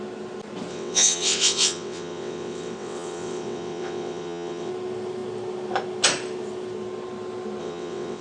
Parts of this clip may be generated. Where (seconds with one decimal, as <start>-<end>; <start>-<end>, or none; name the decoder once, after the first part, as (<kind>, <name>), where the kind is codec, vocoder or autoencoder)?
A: 0.7-4.7 (vocoder, WaveNeXt); 7.6-8.2